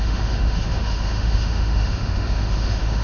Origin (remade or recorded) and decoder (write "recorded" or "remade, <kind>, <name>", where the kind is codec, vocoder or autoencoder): remade, autoencoder, DAC-VAE